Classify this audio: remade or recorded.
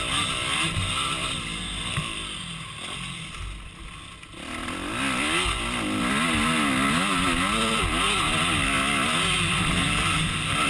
recorded